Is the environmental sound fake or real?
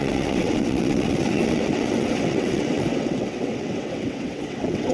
fake